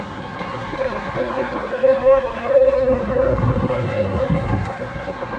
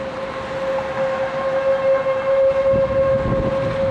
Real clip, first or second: second